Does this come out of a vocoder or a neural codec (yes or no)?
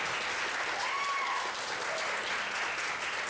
no